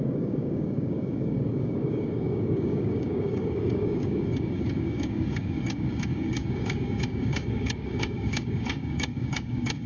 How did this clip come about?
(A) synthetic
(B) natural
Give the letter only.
A